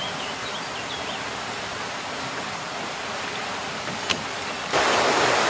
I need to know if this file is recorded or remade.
recorded